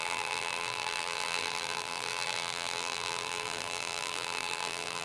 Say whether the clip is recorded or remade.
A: remade